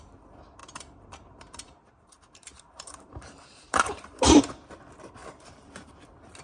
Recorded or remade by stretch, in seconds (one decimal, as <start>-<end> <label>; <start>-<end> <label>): 0.0-0.6 recorded; 0.6-4.4 remade; 4.4-5.2 recorded; 5.2-5.9 remade; 5.9-6.4 recorded